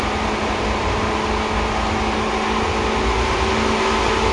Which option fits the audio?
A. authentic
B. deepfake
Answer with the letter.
A